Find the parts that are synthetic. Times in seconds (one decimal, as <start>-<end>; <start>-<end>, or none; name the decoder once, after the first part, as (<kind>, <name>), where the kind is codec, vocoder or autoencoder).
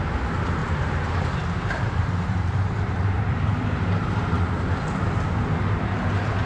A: 0.6-4.5 (vocoder, BigVGAN v2)